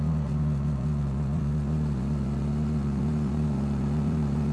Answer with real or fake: fake